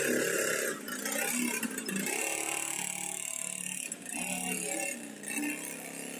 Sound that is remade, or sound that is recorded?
recorded